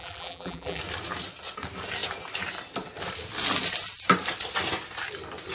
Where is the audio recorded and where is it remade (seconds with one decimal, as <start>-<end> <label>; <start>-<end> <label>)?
0.0-0.8 remade; 0.8-5.5 recorded